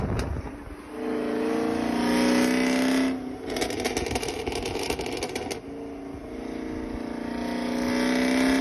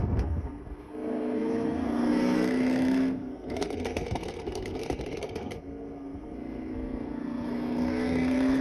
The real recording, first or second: first